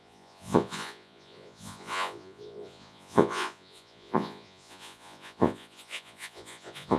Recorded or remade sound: remade